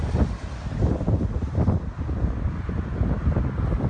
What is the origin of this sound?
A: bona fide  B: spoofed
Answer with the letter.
A